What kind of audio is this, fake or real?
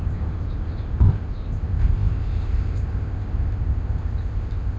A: fake